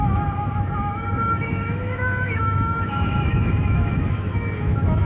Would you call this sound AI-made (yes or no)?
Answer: yes